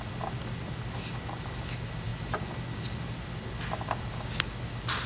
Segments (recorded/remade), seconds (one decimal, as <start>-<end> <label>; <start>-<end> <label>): 0.0-5.1 recorded